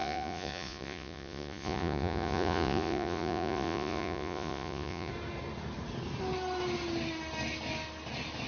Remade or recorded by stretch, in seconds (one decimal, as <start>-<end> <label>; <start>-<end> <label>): 0.0-5.1 remade; 5.1-8.5 recorded